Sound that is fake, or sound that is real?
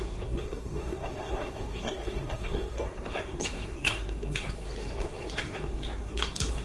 fake